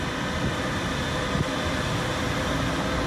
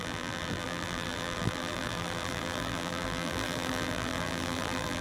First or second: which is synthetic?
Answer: second